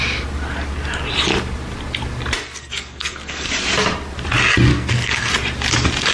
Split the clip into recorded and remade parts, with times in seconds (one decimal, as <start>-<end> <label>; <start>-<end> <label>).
0.0-2.6 recorded; 2.6-3.5 remade; 3.5-4.7 recorded; 4.7-5.3 remade; 5.3-6.1 recorded